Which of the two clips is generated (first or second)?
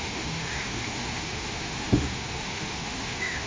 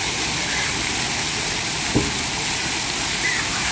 first